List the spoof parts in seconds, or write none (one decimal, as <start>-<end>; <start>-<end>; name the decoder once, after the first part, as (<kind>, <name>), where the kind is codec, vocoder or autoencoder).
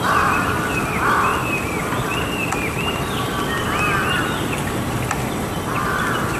none